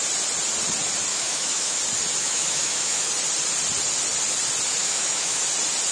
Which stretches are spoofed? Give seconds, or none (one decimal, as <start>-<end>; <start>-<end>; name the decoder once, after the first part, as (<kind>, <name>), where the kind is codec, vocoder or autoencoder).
1.1-1.8 (autoencoder, DAC-VAE); 2.2-3.1; 4.8-5.4